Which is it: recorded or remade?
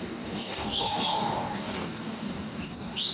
remade